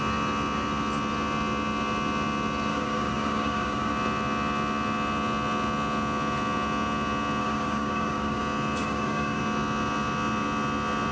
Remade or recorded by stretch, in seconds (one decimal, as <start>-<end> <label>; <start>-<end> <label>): 0.0-2.7 recorded; 2.7-3.9 remade; 3.9-7.4 recorded; 7.4-8.4 remade; 8.4-8.8 recorded; 8.8-9.4 remade; 9.4-11.1 recorded